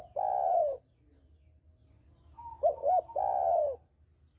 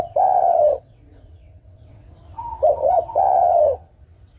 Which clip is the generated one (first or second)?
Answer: second